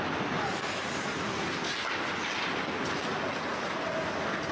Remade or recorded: recorded